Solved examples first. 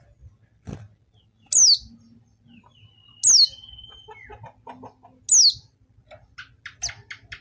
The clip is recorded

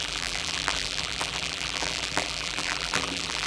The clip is remade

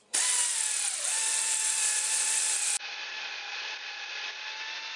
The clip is recorded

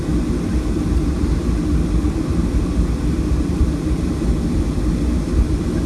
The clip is recorded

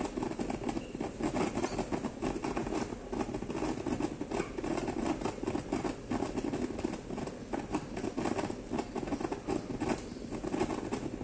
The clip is recorded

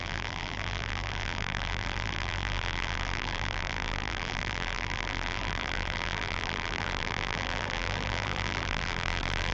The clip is remade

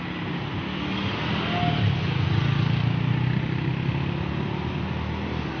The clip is recorded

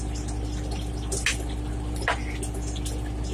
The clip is recorded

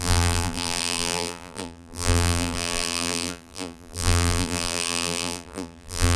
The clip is remade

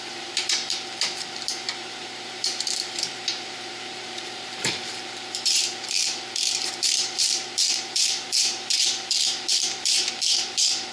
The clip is remade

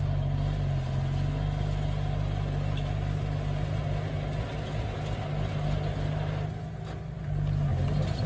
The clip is recorded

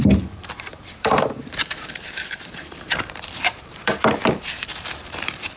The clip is remade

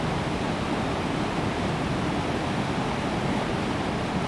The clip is recorded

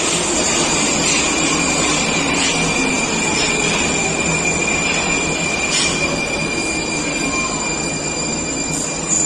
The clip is recorded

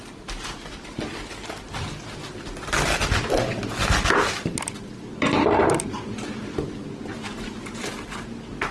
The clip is recorded